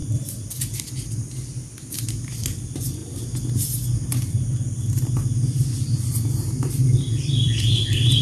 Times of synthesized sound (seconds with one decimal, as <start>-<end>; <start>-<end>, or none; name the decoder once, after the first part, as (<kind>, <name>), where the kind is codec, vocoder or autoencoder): 2.3-3.0 (vocoder, BigVGAN v2); 6.6-8.2